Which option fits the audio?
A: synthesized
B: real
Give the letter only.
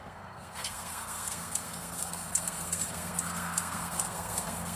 A